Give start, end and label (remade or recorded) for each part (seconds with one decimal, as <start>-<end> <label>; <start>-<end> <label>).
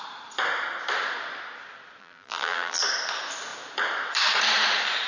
0.0-2.0 recorded; 2.0-2.8 remade; 2.8-5.1 recorded